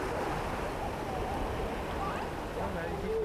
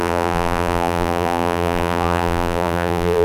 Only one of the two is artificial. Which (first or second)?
second